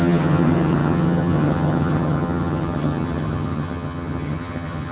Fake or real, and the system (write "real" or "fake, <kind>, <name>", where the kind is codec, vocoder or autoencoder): fake, vocoder, HiFi-GAN